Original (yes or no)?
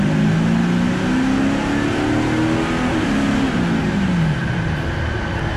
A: yes